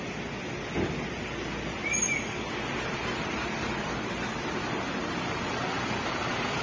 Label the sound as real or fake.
real